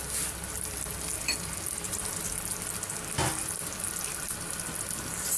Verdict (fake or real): real